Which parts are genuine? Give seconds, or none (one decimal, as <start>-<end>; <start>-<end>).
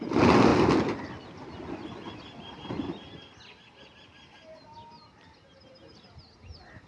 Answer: 0.0-0.5; 1.2-2.0; 2.8-6.9